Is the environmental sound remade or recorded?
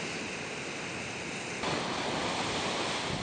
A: recorded